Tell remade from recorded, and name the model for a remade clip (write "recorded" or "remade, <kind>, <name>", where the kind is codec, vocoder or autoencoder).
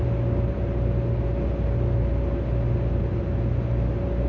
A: recorded